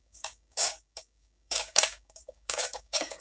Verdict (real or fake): fake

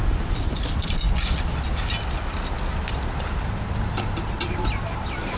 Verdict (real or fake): real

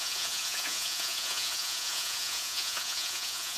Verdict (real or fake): fake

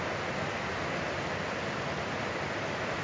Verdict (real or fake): real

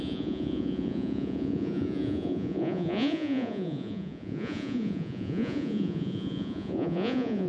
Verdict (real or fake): fake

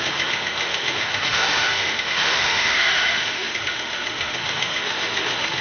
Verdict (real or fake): fake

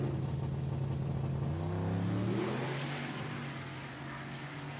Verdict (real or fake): real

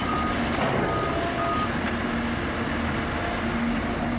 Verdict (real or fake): real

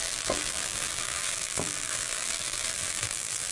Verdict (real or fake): fake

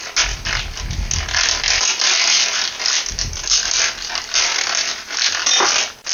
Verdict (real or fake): real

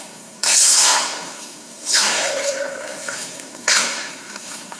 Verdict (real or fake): fake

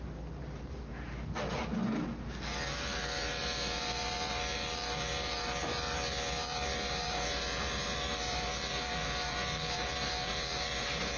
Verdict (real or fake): fake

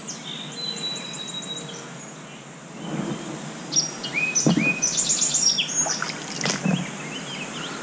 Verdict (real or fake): real